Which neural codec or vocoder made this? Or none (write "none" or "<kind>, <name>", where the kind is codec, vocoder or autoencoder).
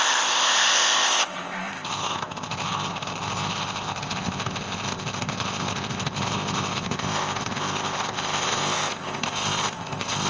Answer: codec, ZipCodec